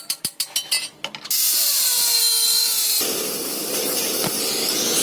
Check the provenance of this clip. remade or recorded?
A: recorded